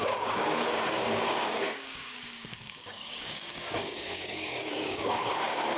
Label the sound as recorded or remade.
remade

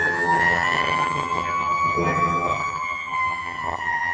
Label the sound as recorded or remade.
remade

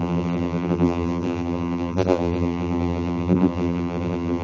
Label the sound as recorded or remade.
remade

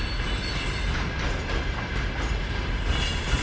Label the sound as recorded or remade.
recorded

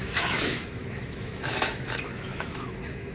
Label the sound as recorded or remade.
remade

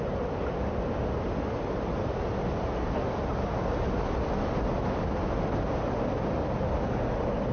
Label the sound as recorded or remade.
recorded